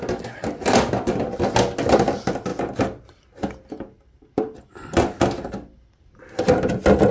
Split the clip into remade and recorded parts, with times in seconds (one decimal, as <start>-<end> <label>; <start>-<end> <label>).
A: 0.0-7.1 recorded